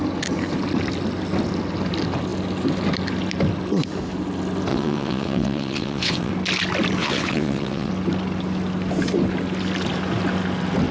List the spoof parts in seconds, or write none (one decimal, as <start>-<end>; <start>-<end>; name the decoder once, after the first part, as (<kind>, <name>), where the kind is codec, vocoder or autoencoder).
4.7-6.3 (vocoder, WaveNeXt); 7.0-7.9